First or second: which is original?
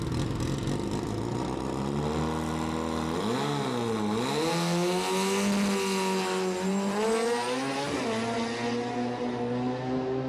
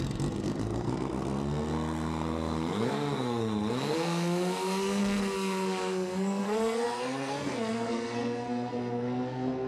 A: first